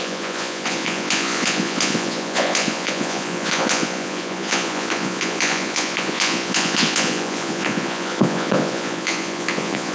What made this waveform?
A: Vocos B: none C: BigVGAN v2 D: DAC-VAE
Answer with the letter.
A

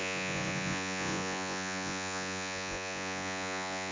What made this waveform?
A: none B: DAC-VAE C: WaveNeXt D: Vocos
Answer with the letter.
D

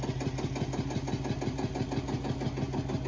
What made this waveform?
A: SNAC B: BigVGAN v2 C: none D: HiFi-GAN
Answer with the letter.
C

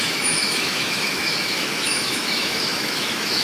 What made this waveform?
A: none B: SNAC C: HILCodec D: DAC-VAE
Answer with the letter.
D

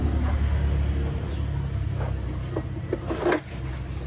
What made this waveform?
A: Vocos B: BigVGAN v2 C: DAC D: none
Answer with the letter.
D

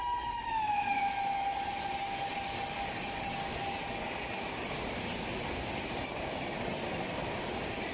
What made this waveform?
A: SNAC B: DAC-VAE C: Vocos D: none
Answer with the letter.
D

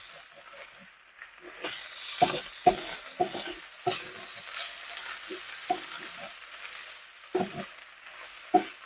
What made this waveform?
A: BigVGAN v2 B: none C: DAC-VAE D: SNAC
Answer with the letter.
B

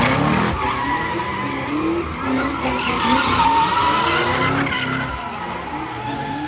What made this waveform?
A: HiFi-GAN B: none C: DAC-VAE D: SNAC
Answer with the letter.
B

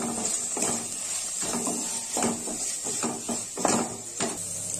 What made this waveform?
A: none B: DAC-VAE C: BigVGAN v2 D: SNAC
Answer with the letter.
A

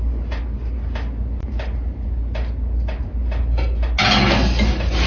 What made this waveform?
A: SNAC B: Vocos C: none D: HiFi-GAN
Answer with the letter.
C